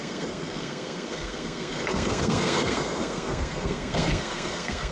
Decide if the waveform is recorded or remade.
remade